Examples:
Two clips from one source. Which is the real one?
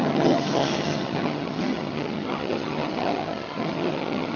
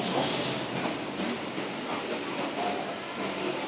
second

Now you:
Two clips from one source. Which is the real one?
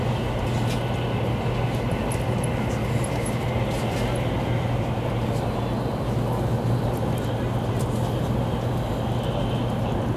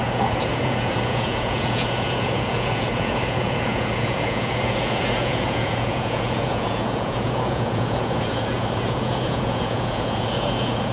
first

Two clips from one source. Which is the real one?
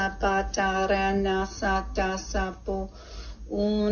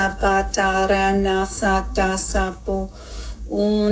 first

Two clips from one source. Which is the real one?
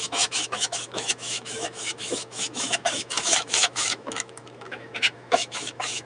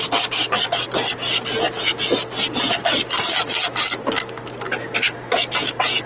second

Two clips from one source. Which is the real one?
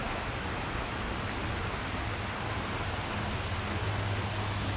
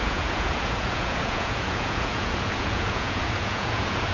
first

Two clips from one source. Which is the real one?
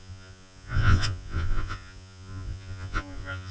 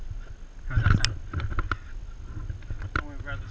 second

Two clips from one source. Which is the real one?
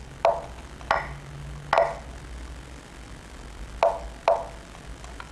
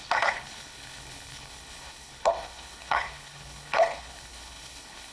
first